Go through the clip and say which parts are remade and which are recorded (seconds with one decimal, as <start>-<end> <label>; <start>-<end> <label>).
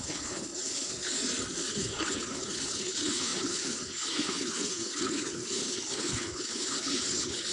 0.0-1.2 remade; 1.2-1.7 recorded; 1.7-7.5 remade